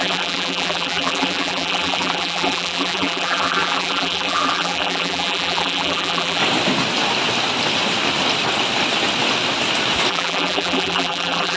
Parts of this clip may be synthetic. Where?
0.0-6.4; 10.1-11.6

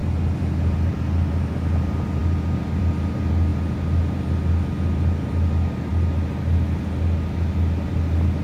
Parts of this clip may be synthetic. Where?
none

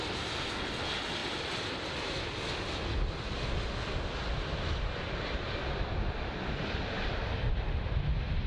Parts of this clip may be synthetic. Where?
none

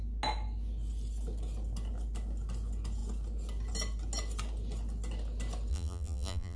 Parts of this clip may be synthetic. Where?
5.7-6.6

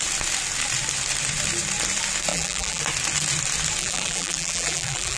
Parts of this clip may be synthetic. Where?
2.3-2.8; 3.8-5.2